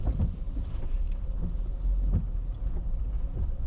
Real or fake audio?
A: real